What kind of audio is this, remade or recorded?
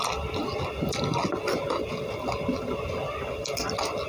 recorded